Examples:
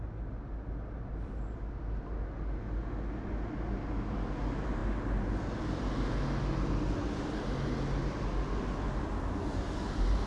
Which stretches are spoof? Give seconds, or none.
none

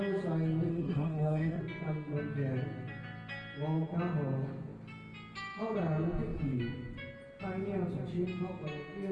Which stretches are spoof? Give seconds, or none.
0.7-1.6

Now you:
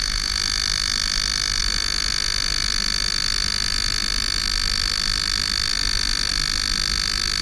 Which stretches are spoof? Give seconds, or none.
none

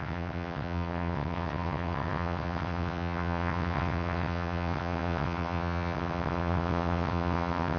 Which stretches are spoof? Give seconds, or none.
0.0-7.8

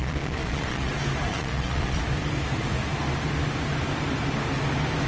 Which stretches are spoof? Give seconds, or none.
0.0-0.9; 1.3-2.0

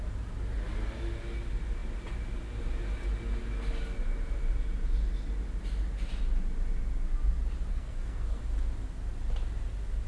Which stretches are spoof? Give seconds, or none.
7.7-8.4

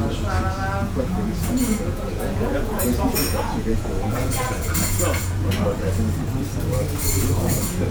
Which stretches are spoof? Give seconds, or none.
0.8-5.5

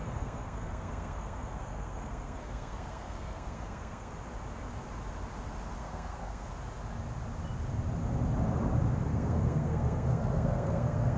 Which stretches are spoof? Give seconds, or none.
0.0-4.1; 5.8-6.5; 9.1-11.2